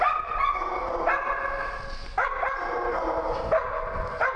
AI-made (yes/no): no